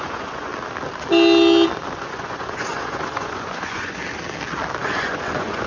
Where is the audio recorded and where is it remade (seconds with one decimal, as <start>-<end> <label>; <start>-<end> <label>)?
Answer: 0.0-0.5 remade; 0.5-2.0 recorded; 2.0-4.0 remade; 4.0-4.8 recorded; 4.8-5.7 remade